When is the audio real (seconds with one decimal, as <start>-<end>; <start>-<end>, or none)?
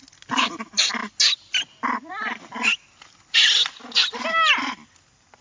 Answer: 0.0-5.4